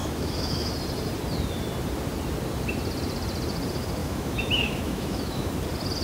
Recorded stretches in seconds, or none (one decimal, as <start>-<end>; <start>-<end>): 0.7-4.0; 5.5-6.0